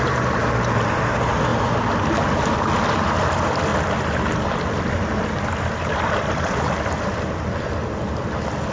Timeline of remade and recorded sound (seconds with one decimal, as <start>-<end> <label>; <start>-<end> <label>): 0.0-8.7 recorded